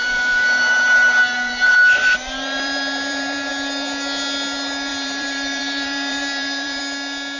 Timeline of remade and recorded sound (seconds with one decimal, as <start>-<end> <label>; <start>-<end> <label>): 0.0-3.5 remade; 3.5-4.9 recorded; 4.9-6.8 remade; 6.8-7.4 recorded